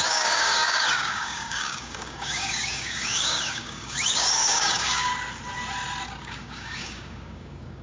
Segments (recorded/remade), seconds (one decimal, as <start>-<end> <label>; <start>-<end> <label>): 0.0-5.1 remade; 5.1-6.2 recorded; 6.2-7.8 remade